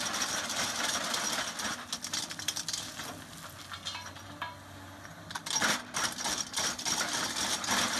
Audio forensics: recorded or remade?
recorded